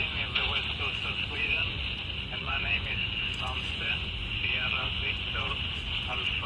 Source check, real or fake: fake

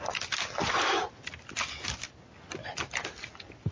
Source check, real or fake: real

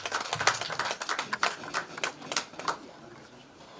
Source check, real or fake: real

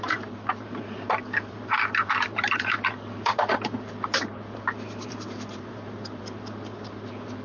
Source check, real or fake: fake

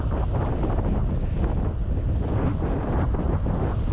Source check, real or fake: real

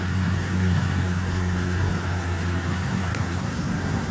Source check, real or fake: fake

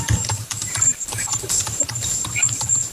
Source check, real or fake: fake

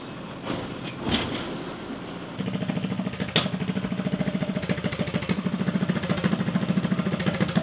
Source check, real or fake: real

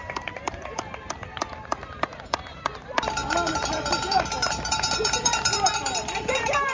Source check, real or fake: fake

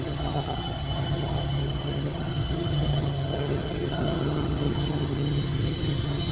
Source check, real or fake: fake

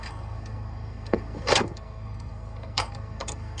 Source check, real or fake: fake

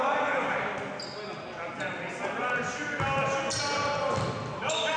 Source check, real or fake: real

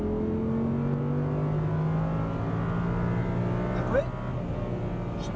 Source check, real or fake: real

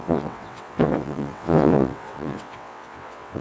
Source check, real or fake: fake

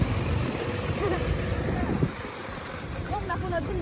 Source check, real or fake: fake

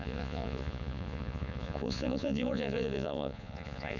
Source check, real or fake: fake